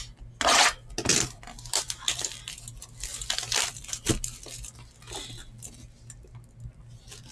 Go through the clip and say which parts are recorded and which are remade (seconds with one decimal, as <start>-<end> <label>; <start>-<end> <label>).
0.0-1.1 recorded; 1.1-3.9 remade; 3.9-7.3 recorded